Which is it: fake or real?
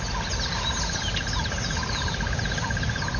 real